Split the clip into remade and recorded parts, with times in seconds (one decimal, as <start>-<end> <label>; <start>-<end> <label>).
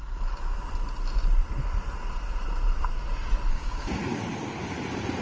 0.0-3.5 recorded; 3.5-4.0 remade; 4.0-5.2 recorded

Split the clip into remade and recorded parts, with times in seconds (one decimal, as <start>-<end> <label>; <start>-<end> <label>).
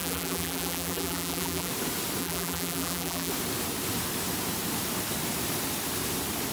0.0-1.7 remade; 1.7-2.2 recorded; 2.2-3.3 remade; 3.3-6.5 recorded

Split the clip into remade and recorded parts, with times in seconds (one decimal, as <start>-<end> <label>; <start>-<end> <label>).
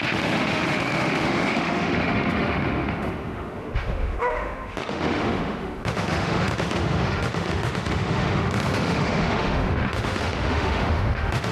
0.0-11.5 remade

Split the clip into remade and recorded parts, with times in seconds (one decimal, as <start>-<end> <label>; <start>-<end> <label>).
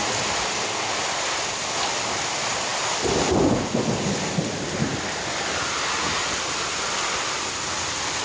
0.0-8.2 recorded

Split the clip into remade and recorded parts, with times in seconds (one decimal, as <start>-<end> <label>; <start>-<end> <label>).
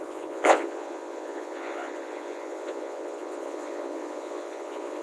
0.0-5.0 remade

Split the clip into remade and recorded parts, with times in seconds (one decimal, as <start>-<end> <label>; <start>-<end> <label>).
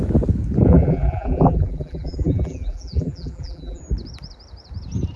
0.0-0.7 recorded; 0.7-3.8 remade; 3.8-5.2 recorded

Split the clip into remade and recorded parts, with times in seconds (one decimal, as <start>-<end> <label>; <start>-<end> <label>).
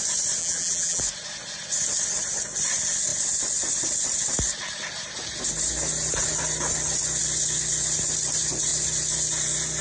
0.0-0.4 recorded; 0.4-1.0 remade; 1.0-9.8 recorded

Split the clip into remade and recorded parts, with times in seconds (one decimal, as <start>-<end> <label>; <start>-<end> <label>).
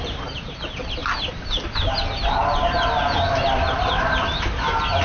0.0-5.0 recorded